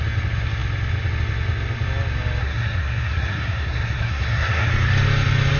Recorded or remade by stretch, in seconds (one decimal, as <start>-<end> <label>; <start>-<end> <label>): 0.0-2.4 recorded; 2.4-4.7 remade; 4.7-5.6 recorded